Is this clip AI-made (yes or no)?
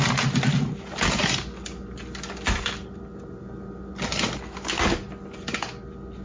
no